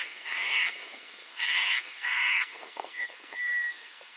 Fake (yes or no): yes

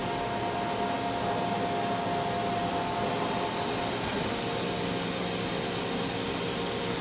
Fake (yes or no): no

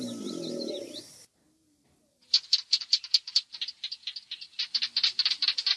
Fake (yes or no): yes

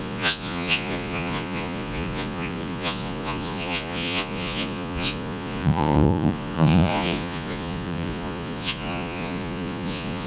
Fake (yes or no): yes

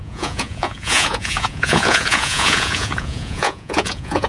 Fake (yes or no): yes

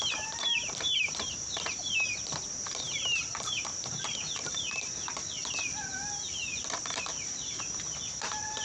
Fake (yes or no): yes